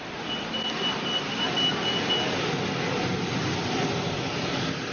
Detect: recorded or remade recorded